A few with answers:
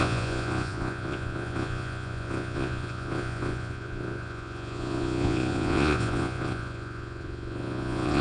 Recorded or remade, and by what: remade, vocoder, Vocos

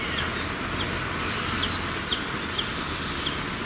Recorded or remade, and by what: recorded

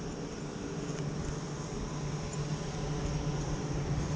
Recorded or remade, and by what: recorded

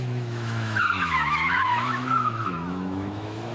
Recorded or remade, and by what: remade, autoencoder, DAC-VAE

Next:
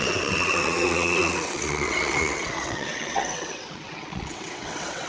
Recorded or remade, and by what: remade, vocoder, WaveNeXt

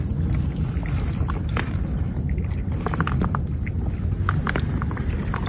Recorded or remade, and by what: recorded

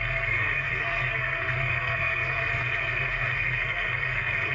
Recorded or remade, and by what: remade, codec, SNAC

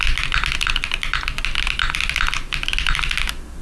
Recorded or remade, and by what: recorded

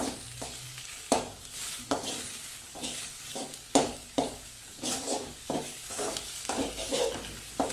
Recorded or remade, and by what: remade, codec, DAC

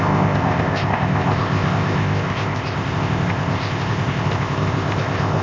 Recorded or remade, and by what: remade, codec, ZipCodec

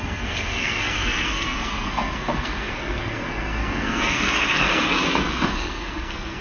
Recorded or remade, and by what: remade, codec, SNAC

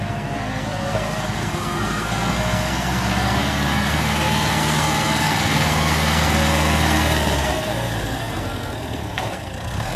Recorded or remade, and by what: remade, codec, SNAC